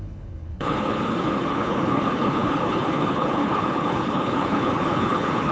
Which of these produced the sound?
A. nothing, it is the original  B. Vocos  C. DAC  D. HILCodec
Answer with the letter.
D